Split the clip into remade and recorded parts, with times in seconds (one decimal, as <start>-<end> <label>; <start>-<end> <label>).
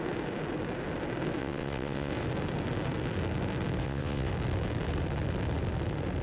0.0-1.4 recorded; 1.4-2.1 remade; 2.1-3.8 recorded; 3.8-4.3 remade; 4.3-6.2 recorded